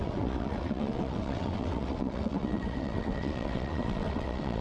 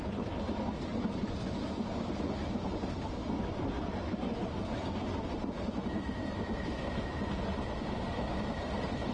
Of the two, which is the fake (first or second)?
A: first